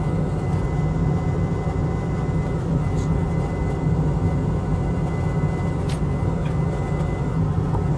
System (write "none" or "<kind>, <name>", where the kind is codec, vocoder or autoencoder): none